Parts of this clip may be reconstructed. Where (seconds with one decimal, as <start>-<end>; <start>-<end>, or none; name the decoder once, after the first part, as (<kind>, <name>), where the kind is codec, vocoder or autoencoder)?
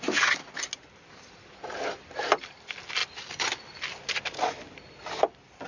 none